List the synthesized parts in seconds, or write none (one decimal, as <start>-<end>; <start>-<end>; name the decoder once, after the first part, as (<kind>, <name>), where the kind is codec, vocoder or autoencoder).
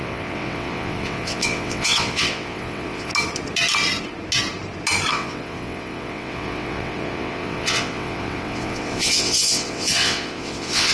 0.0-3.1 (vocoder, WaveNeXt); 5.1-10.9